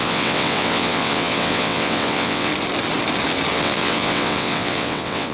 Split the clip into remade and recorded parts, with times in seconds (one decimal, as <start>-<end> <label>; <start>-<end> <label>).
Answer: 0.0-2.5 remade; 2.5-3.5 recorded; 3.5-5.3 remade